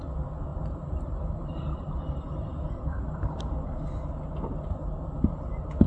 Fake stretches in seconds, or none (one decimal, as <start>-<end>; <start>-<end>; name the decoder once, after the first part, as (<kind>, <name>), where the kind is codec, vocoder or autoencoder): 0.5-3.4 (vocoder, BigVGAN v2)